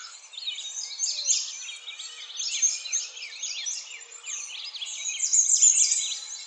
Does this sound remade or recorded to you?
recorded